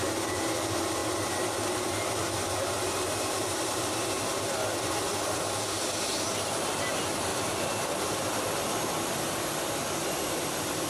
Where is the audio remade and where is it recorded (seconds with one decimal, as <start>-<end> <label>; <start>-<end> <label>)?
0.0-1.0 recorded; 1.0-4.4 remade; 4.4-7.3 recorded; 7.3-10.9 remade